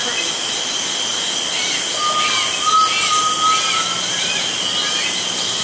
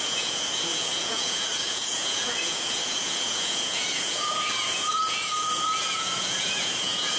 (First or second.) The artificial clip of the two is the second